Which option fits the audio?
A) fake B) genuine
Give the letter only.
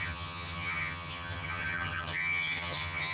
A